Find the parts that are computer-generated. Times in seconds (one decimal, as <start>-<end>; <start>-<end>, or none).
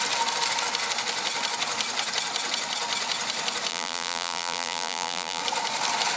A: 3.7-5.4